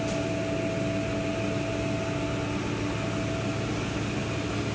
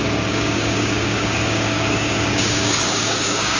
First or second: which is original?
first